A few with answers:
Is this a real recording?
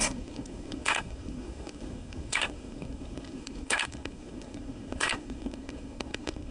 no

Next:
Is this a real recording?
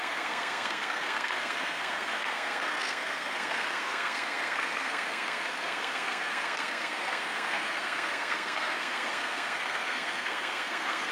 no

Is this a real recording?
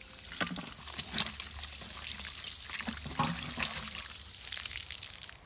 yes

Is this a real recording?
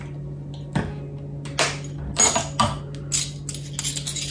yes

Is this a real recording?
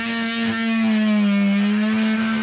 yes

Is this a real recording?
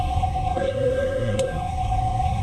no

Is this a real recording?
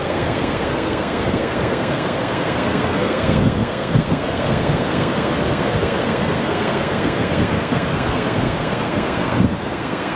no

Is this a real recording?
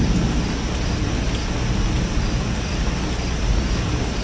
yes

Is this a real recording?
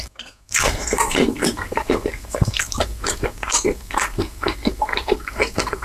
no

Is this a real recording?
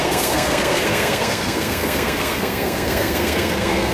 no